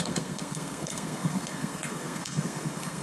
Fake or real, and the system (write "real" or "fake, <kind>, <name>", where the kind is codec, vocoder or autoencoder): fake, codec, SNAC